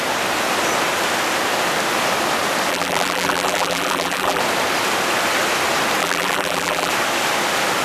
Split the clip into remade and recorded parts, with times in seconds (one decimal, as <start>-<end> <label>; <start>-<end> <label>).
0.0-2.7 recorded; 2.7-4.4 remade; 4.4-6.0 recorded; 6.0-6.9 remade; 6.9-7.8 recorded